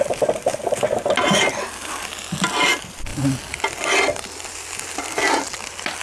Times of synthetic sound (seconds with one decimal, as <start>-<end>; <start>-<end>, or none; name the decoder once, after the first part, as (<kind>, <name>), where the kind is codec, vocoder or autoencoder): none